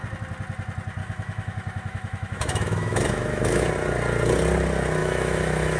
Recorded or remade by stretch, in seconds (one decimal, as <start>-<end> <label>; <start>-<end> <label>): 0.0-1.0 recorded; 1.0-3.7 remade; 3.7-5.0 recorded; 5.0-5.8 remade